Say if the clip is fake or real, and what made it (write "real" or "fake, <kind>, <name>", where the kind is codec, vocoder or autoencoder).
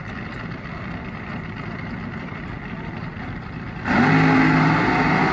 real